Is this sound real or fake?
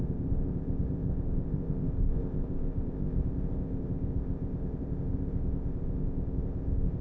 fake